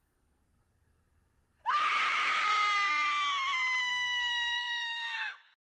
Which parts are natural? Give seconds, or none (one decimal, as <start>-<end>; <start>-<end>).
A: 0.4-3.8